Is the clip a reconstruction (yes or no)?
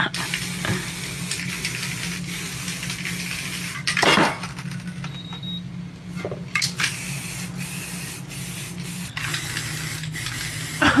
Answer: no